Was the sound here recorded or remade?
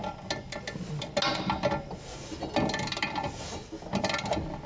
recorded